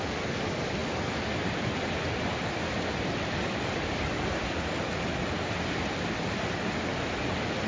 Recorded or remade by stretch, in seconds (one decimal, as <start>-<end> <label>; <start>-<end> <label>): 0.0-7.7 recorded